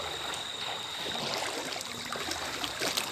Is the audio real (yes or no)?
yes